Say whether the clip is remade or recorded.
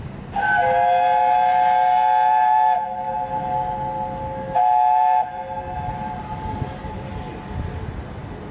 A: recorded